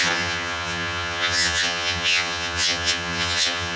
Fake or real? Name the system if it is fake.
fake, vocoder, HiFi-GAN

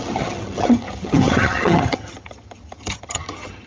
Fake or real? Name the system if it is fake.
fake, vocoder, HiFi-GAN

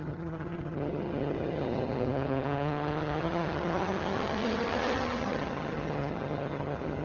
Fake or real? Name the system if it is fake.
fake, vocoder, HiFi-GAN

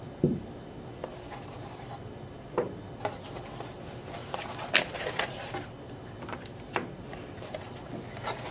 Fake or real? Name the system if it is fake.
real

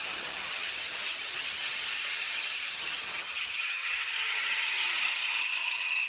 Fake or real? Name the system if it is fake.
fake, vocoder, HiFi-GAN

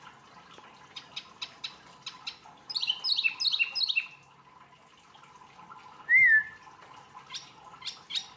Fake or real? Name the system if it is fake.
real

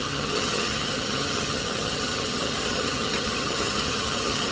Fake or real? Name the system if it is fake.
fake, vocoder, HiFi-GAN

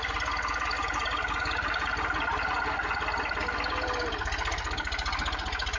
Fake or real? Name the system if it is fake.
real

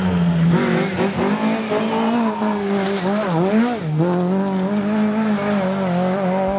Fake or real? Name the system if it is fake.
real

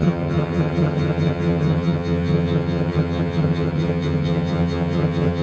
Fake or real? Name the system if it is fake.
fake, vocoder, HiFi-GAN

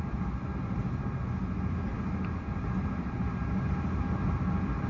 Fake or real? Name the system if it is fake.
real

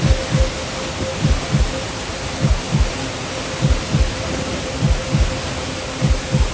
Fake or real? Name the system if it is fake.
real